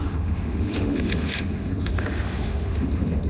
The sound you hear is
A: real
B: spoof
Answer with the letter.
B